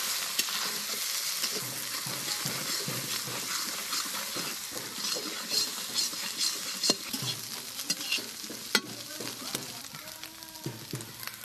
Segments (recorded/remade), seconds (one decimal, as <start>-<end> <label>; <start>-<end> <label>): 0.0-11.4 recorded